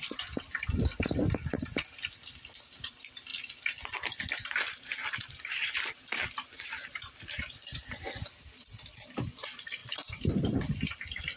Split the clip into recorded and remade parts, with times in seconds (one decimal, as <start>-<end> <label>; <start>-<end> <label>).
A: 0.0-11.4 recorded